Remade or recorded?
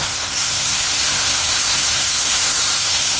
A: remade